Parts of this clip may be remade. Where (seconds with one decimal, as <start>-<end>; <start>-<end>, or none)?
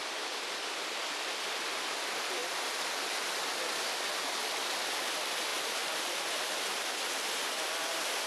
0.0-0.6